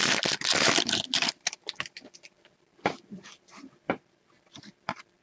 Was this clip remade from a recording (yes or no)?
yes